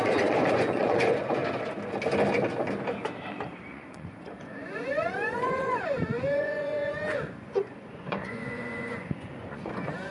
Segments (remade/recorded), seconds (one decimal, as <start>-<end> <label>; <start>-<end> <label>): 0.0-1.4 remade; 1.4-3.7 recorded; 3.7-10.1 remade